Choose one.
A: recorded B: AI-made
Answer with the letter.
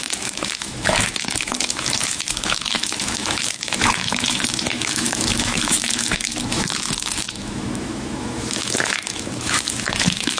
B